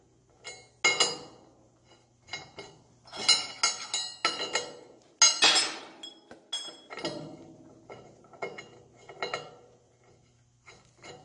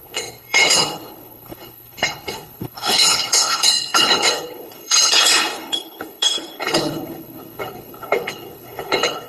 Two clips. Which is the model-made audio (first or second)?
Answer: second